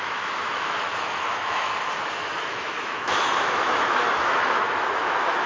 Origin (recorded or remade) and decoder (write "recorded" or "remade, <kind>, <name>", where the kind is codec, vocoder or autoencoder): remade, autoencoder, DAC-VAE